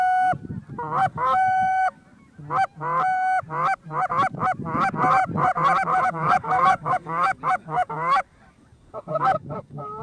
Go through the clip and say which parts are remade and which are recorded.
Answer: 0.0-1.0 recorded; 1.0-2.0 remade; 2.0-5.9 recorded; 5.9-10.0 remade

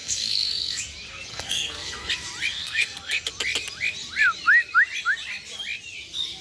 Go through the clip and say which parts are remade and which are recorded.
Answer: 0.0-0.8 remade; 0.8-1.3 recorded; 1.3-2.1 remade; 2.1-2.5 recorded; 2.5-3.3 remade; 3.3-6.4 recorded

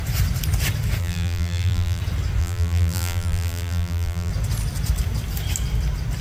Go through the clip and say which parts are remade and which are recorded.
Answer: 0.0-1.0 recorded; 1.0-2.0 remade; 2.0-2.4 recorded; 2.4-4.3 remade; 4.3-6.2 recorded